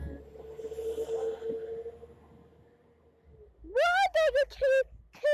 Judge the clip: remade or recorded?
recorded